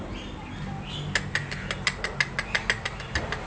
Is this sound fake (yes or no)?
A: no